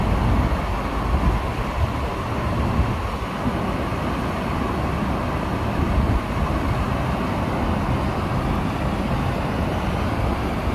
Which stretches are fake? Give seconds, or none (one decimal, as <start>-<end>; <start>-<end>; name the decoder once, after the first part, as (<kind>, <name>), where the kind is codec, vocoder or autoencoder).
none